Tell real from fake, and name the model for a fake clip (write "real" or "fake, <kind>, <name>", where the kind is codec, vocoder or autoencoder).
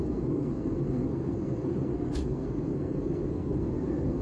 fake, codec, SNAC